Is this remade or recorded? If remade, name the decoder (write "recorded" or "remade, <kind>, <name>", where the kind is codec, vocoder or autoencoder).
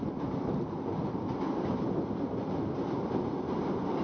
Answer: recorded